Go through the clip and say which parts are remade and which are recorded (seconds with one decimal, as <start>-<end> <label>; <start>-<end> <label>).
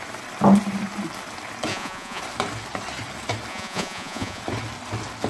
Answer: 0.0-1.7 recorded; 1.7-2.2 remade; 2.2-3.5 recorded; 3.5-4.4 remade; 4.4-5.3 recorded